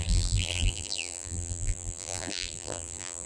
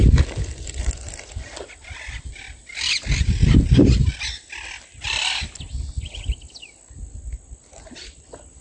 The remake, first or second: first